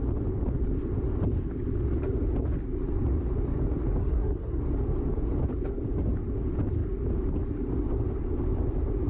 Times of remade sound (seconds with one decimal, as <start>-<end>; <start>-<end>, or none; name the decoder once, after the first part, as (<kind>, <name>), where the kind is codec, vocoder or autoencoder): 4.0-4.6 (codec, SNAC)